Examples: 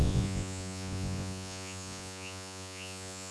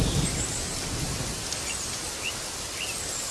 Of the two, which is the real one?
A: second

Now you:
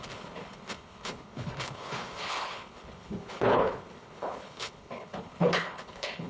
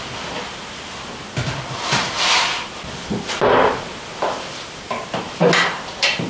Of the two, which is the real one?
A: second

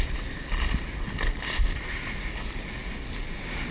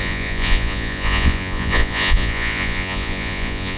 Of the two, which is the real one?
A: first